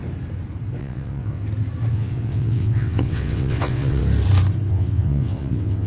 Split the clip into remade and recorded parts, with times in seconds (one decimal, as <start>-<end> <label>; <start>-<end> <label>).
0.0-0.8 recorded; 0.8-1.4 remade; 1.4-1.9 recorded; 1.9-4.0 remade; 4.0-4.7 recorded; 4.7-5.9 remade